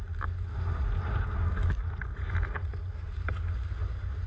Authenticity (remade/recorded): recorded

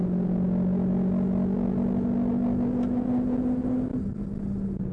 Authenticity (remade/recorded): recorded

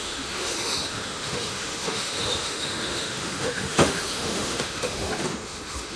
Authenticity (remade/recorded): remade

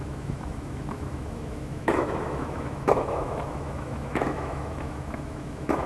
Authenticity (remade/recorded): remade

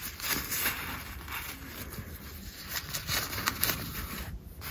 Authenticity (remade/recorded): recorded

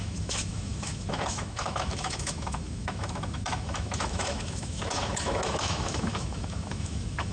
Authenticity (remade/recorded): remade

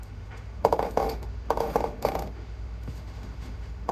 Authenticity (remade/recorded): remade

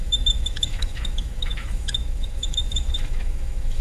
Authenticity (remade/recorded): remade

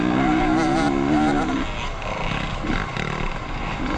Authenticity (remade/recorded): recorded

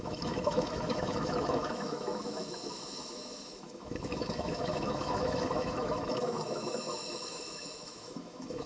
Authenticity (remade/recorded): remade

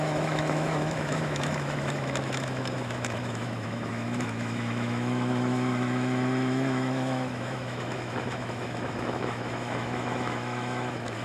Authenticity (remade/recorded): remade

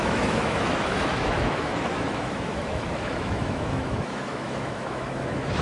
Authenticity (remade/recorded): remade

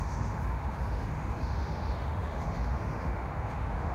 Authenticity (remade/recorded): remade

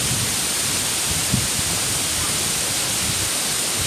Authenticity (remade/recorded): recorded